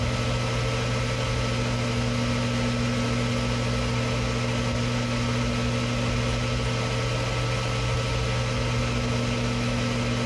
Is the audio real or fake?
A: real